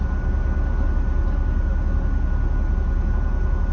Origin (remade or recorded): recorded